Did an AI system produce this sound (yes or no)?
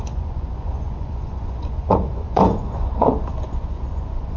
yes